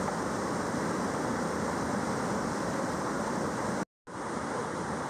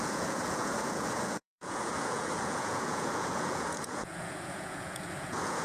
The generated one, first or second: second